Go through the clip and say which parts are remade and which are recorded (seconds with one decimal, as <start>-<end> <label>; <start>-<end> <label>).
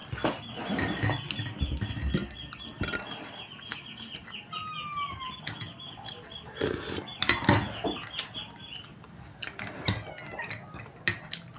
0.0-11.6 recorded